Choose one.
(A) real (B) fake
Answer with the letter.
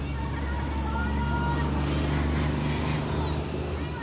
A